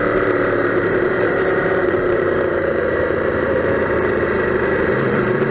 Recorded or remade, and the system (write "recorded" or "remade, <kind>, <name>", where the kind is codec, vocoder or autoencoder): remade, vocoder, BigVGAN v2